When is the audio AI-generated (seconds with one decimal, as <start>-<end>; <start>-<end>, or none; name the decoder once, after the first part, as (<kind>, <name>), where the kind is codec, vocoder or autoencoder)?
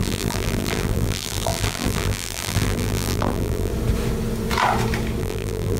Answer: 0.0-3.7 (vocoder, BigVGAN v2); 5.2-5.8